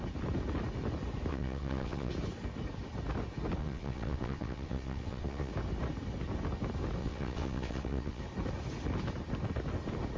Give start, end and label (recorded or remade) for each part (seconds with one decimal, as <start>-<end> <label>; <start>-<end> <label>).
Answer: 0.0-1.3 recorded; 1.3-2.1 remade; 2.1-3.6 recorded; 3.6-5.5 remade; 5.5-7.0 recorded; 7.0-8.2 remade; 8.2-10.2 recorded